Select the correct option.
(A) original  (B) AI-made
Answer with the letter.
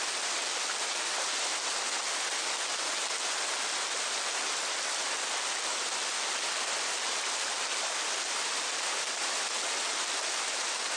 A